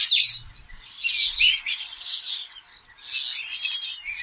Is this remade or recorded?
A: recorded